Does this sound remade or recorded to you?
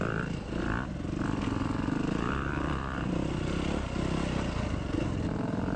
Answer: recorded